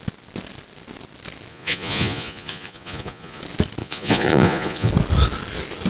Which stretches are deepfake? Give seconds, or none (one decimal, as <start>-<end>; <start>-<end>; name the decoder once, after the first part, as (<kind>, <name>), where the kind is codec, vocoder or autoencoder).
1.5-3.4 (vocoder, Vocos); 3.8-4.9